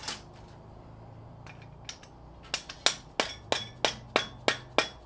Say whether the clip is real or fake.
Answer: real